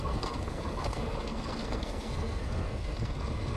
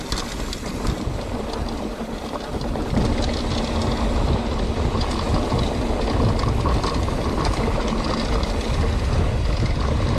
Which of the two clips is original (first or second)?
second